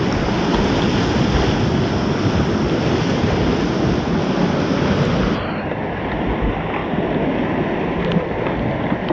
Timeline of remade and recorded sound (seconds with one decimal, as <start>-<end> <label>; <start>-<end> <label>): 0.0-9.1 recorded